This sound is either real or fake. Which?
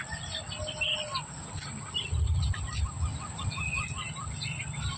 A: real